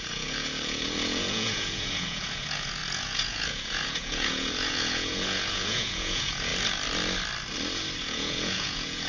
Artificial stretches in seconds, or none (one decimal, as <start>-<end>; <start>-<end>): 0.0-6.5; 8.0-9.1